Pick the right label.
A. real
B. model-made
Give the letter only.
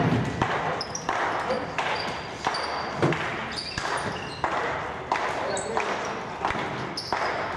A